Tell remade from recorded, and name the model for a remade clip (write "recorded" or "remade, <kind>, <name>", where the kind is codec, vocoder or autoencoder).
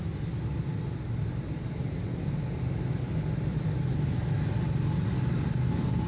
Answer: recorded